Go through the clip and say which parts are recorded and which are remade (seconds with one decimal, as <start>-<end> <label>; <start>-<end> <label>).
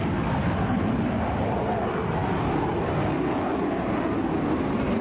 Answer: 0.0-5.0 recorded